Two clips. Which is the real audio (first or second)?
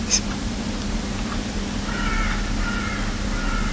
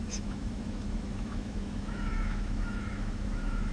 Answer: first